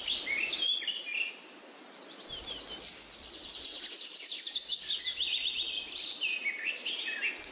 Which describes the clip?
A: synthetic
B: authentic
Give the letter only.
B